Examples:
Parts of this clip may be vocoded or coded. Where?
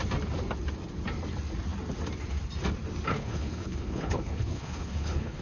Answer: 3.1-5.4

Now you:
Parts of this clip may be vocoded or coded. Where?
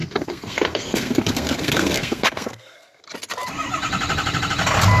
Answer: 0.0-3.0